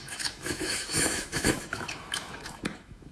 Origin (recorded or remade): remade